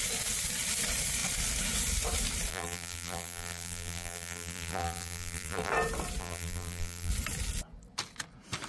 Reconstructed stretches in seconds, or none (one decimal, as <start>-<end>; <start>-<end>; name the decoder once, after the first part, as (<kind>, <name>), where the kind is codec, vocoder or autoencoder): 2.5-5.7 (vocoder, BigVGAN v2); 6.2-7.1